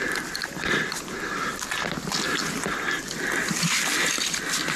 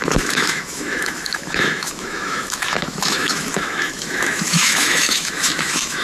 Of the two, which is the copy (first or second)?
second